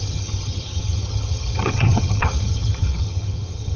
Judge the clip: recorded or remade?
remade